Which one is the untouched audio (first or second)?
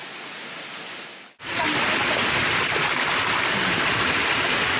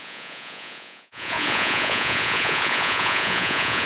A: first